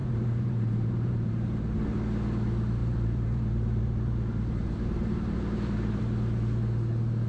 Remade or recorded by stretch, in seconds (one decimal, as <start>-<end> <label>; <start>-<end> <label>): 0.0-1.3 remade; 1.3-2.8 recorded; 2.8-6.0 remade; 6.0-7.3 recorded